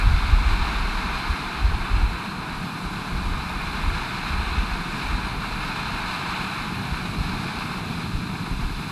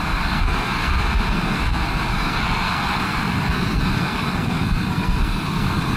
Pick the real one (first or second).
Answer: first